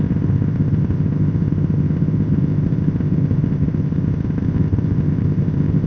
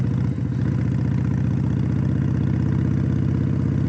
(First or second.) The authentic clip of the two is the second